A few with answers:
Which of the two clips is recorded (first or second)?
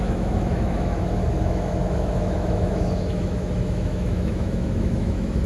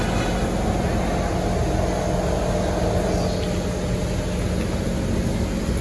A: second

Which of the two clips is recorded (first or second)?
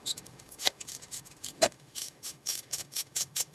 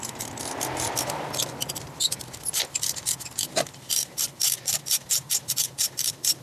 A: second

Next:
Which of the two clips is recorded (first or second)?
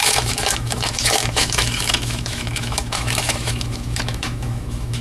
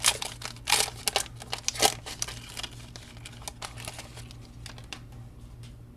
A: second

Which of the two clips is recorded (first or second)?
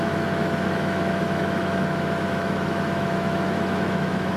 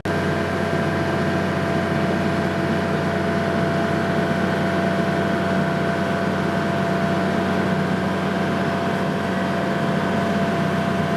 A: second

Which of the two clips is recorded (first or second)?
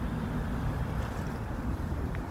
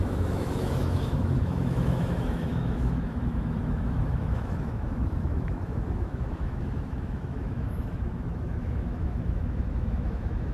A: first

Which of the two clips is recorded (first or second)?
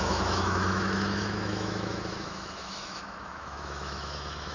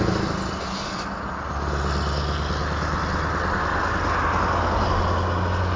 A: second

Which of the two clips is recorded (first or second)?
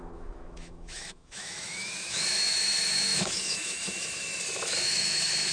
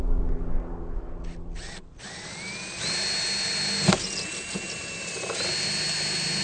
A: second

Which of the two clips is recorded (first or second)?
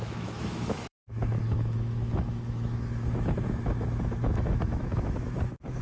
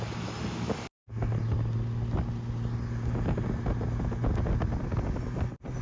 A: second